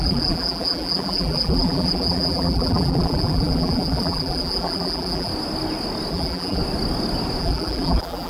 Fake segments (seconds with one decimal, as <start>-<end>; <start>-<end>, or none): 0.0-5.3; 6.1-6.6; 7.4-8.3